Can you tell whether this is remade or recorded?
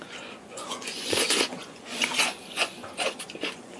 remade